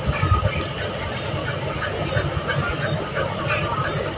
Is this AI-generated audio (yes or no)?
no